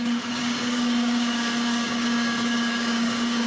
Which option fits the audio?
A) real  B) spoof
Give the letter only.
B